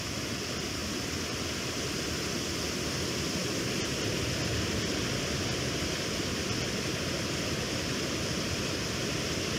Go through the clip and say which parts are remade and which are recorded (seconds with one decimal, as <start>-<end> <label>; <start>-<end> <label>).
0.0-9.6 recorded